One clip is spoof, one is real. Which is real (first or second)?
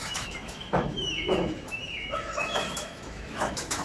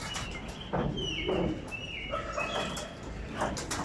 second